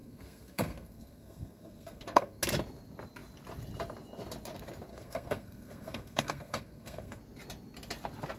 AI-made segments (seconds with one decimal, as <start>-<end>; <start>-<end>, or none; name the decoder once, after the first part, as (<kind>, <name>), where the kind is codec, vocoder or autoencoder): 0.0-2.4 (codec, SNAC); 4.9-7.2